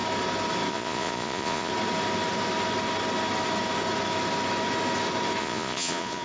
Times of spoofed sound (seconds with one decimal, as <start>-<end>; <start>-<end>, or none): 0.7-1.7; 5.4-6.2